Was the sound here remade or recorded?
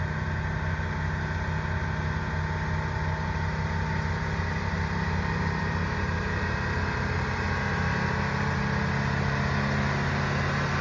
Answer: recorded